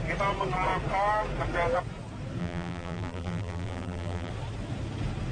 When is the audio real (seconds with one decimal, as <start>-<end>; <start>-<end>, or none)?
0.0-2.4; 4.3-5.3